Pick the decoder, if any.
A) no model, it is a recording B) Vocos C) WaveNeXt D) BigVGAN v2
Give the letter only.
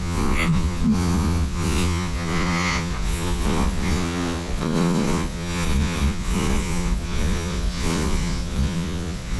B